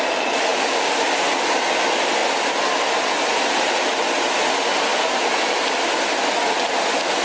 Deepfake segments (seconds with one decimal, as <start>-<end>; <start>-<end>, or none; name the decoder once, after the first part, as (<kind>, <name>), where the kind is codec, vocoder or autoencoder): 2.2-3.4 (vocoder, BigVGAN v2); 4.9-6.5